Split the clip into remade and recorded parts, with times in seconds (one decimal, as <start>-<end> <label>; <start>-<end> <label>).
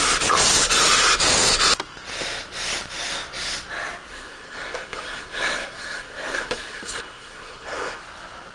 0.0-4.1 recorded; 4.1-8.0 remade; 8.0-8.5 recorded